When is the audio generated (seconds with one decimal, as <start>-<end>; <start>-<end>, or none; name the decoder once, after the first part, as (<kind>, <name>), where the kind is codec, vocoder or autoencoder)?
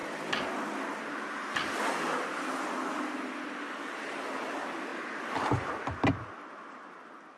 none